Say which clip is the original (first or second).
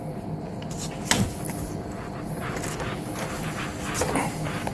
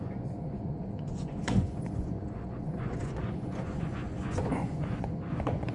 first